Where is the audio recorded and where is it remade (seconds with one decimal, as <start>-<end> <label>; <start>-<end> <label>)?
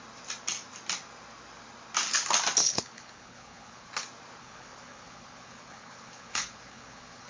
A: 0.0-2.6 recorded; 2.6-3.9 remade; 3.9-4.4 recorded; 4.4-7.3 remade